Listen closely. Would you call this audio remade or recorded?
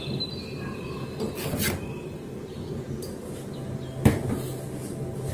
recorded